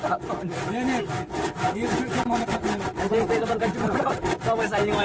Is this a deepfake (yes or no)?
no